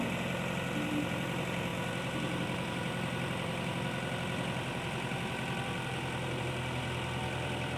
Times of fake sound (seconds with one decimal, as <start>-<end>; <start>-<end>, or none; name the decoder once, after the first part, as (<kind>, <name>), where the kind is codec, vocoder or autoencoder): none